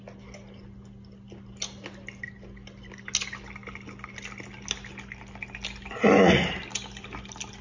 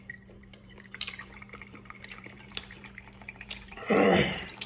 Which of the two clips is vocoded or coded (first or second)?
second